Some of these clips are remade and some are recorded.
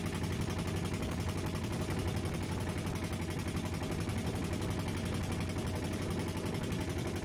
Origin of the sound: recorded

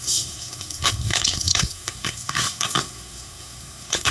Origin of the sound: remade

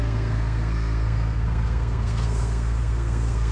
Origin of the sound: remade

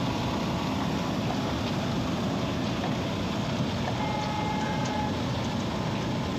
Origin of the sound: recorded